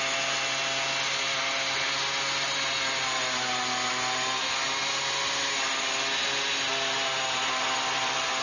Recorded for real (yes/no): yes